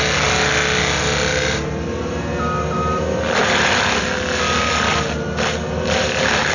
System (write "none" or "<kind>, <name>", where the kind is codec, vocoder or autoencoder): none